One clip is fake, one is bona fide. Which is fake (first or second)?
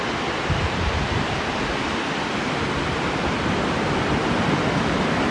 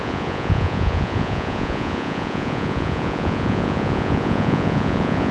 second